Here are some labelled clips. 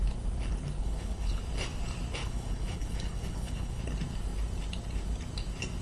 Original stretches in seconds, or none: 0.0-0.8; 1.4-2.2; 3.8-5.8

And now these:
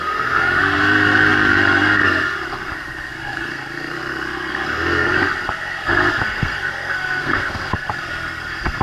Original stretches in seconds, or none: none

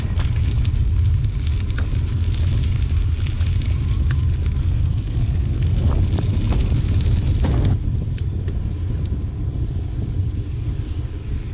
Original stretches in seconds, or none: 0.0-4.6; 5.9-11.5

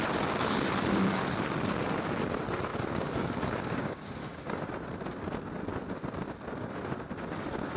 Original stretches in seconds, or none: 0.0-2.7; 4.6-7.8

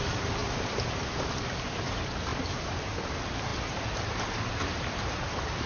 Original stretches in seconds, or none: 0.0-0.4; 1.9-2.3; 2.8-5.7

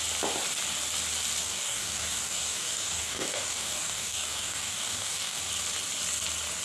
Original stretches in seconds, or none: 0.0-1.4; 5.4-6.6

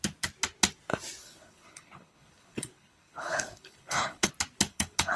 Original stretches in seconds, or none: 0.0-1.2; 4.3-4.7

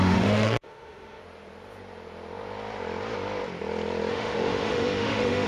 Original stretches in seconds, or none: 1.2-4.1